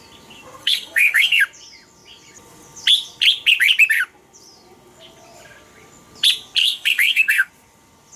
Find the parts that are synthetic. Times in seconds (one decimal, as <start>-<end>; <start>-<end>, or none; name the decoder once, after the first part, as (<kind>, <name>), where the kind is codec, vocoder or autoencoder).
0.6-1.4 (codec, SNAC); 6.6-7.5